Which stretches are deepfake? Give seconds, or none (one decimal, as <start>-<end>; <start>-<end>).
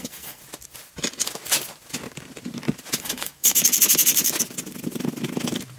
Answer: 0.0-0.4; 3.0-3.6